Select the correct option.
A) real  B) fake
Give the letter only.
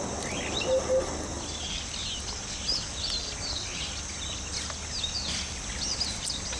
A